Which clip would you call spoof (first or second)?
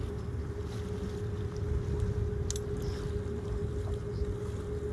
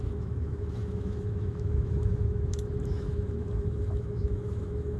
second